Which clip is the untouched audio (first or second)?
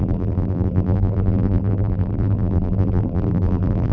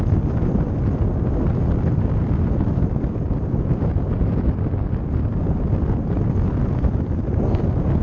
second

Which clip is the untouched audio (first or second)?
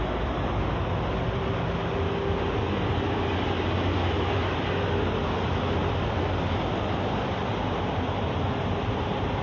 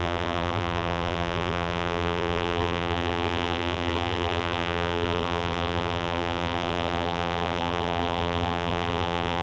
first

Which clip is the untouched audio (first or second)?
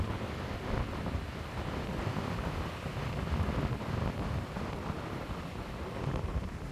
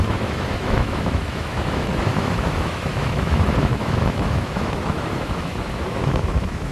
first